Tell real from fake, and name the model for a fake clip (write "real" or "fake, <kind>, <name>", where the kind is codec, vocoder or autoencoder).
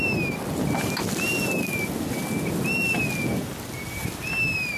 real